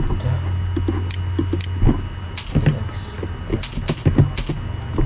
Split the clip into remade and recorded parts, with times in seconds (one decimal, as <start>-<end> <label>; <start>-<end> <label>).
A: 0.0-5.1 recorded